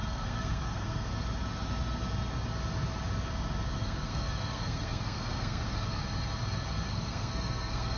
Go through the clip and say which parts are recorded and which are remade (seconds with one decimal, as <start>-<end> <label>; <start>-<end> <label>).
0.0-1.1 remade; 1.1-3.8 recorded; 3.8-6.0 remade; 6.0-6.9 recorded; 6.9-8.0 remade